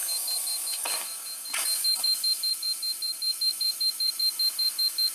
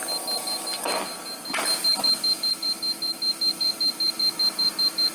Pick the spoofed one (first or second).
first